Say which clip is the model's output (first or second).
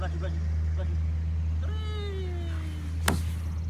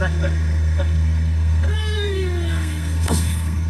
second